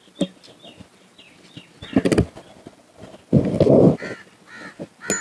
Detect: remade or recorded recorded